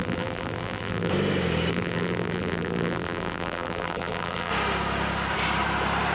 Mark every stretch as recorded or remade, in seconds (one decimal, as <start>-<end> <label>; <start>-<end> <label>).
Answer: 0.0-1.1 remade; 1.1-1.7 recorded; 1.7-4.5 remade; 4.5-6.1 recorded